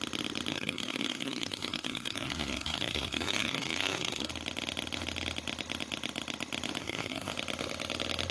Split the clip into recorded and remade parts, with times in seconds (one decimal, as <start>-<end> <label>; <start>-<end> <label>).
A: 0.0-0.5 recorded; 0.5-4.3 remade; 4.3-6.8 recorded; 6.8-7.3 remade; 7.3-8.3 recorded